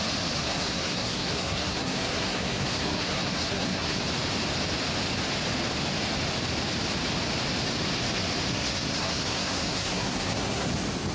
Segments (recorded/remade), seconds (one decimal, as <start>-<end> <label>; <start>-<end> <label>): 0.0-0.4 recorded; 0.4-4.0 remade; 4.0-8.5 recorded; 8.5-10.7 remade; 10.7-11.1 recorded